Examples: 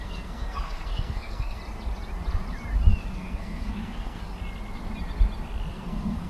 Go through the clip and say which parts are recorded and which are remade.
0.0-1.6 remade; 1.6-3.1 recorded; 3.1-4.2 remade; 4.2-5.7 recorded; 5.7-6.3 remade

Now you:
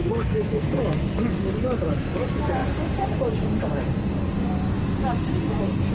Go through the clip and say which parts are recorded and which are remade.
0.0-0.8 remade; 0.8-5.9 recorded

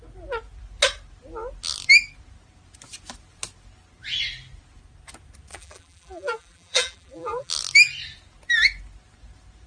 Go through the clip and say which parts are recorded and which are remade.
0.0-5.5 recorded; 5.5-7.5 remade; 7.5-9.7 recorded

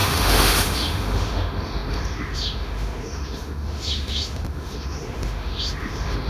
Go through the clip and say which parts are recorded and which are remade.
0.0-6.3 remade

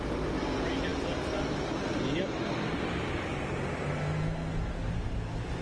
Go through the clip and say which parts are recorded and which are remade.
0.0-5.6 recorded

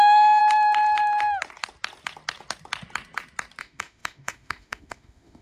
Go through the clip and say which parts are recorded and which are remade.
0.0-0.4 remade; 0.4-3.6 recorded; 3.6-5.4 remade

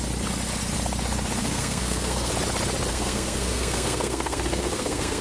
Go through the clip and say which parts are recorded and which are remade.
0.0-1.4 recorded; 1.4-2.3 remade; 2.3-2.9 recorded; 2.9-5.2 remade